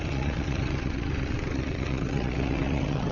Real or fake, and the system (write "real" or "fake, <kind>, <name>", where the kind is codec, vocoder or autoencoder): fake, vocoder, WaveNeXt